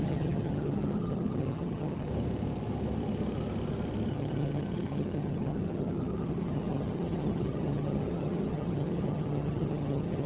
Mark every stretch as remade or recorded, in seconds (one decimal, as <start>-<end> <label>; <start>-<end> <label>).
0.0-2.1 remade; 2.1-4.1 recorded; 4.1-10.3 remade